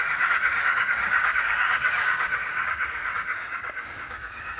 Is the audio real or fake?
fake